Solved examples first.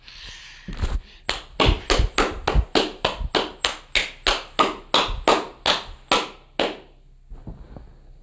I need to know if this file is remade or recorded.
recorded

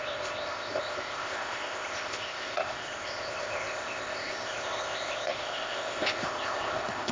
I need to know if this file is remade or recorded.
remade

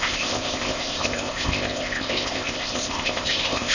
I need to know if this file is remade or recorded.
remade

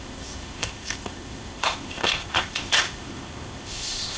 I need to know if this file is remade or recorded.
remade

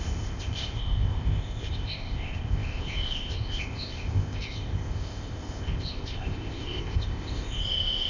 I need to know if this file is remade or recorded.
remade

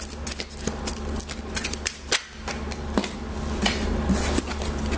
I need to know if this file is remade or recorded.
recorded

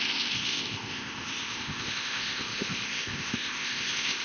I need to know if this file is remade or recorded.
remade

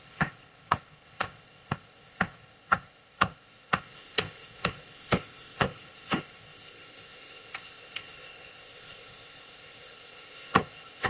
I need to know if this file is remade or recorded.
remade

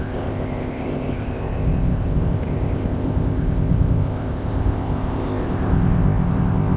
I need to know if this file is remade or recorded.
remade